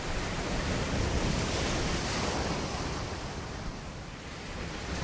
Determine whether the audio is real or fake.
real